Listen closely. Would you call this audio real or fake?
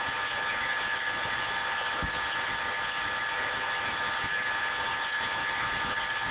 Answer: real